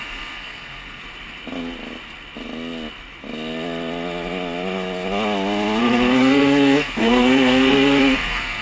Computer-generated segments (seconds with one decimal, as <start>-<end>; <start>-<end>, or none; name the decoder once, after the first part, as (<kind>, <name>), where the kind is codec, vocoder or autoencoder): 0.0-1.0 (codec, SNAC); 5.8-8.6